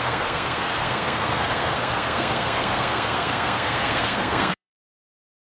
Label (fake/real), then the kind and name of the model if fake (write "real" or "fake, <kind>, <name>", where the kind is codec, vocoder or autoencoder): fake, codec, SNAC